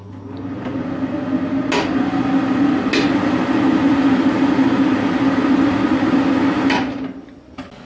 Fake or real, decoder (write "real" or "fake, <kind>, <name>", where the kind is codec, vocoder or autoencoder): real